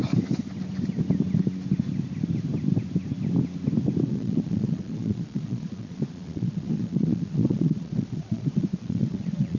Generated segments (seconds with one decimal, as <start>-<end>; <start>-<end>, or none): 4.1-9.6